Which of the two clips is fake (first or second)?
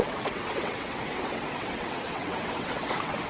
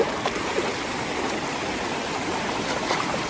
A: first